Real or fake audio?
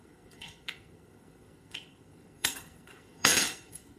fake